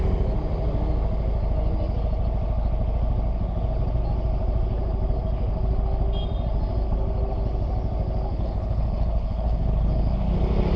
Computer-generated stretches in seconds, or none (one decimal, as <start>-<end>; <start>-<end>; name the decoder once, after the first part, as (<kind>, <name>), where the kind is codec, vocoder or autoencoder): 8.3-10.1 (codec, HILCodec)